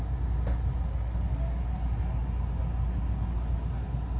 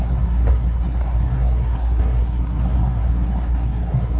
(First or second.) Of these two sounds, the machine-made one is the second